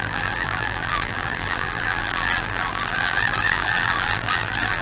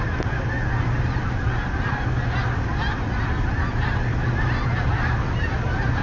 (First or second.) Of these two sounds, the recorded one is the second